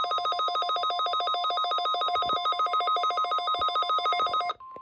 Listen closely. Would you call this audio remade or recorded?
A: recorded